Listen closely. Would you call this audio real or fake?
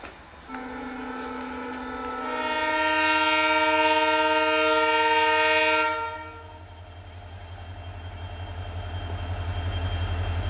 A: real